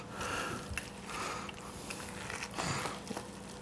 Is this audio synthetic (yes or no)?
no